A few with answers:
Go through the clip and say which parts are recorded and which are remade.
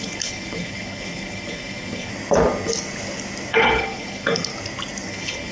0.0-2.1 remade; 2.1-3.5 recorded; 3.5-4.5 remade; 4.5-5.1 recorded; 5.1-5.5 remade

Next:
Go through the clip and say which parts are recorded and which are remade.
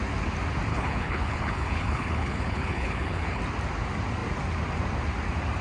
0.0-0.7 recorded; 0.7-3.4 remade; 3.4-5.6 recorded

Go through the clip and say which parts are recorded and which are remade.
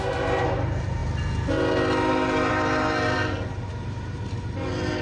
0.0-5.0 recorded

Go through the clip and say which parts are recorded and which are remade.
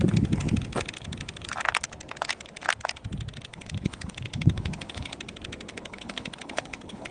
0.0-3.5 recorded; 3.5-5.1 remade; 5.1-5.7 recorded; 5.7-7.1 remade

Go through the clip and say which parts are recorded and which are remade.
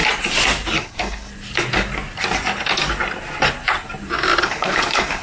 0.0-0.8 recorded; 0.8-1.3 remade; 1.3-4.4 recorded; 4.4-5.2 remade